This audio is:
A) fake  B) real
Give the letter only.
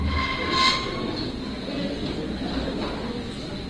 B